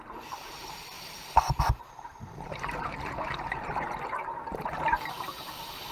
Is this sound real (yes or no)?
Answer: no